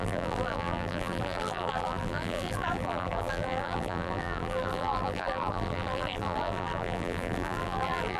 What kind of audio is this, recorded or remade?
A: remade